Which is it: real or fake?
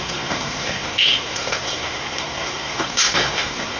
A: fake